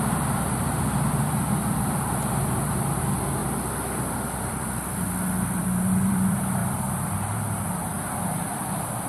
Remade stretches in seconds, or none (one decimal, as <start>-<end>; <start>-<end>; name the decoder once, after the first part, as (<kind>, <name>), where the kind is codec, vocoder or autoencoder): 0.0-3.4 (vocoder, BigVGAN v2); 5.6-9.1